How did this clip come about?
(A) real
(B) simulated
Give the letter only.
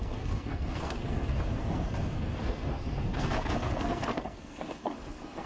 B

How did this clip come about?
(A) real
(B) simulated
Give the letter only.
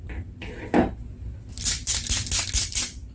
A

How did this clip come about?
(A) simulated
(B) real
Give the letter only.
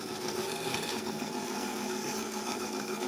A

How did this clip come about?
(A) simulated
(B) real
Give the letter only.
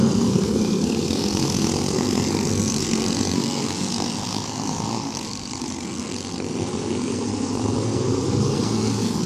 A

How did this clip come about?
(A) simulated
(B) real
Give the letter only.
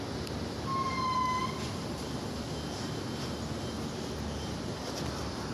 B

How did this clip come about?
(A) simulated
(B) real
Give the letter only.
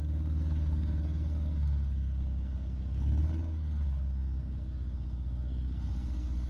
A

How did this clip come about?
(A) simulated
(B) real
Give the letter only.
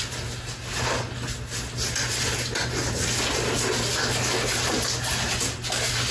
B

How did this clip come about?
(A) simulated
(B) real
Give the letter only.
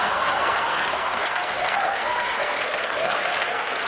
A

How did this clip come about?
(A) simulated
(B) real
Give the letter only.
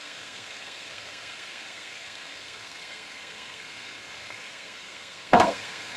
A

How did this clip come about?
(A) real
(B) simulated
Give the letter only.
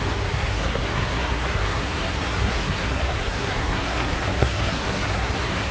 B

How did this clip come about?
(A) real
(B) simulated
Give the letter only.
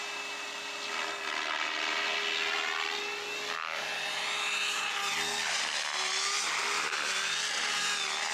A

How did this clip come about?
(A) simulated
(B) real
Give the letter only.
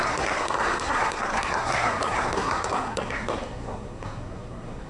A